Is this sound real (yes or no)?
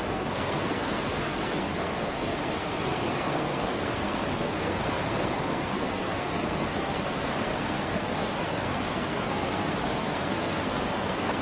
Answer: no